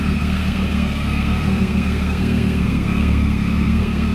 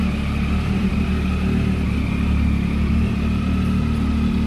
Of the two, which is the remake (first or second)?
first